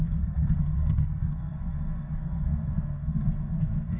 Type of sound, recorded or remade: remade